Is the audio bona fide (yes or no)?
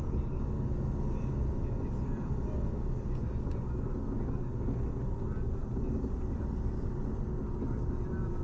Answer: yes